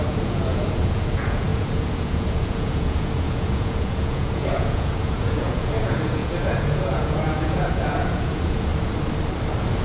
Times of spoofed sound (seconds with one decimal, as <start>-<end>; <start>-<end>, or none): 0.0-8.7